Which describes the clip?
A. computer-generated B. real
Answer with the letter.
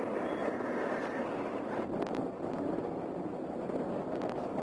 B